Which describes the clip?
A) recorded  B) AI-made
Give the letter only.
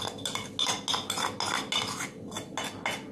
A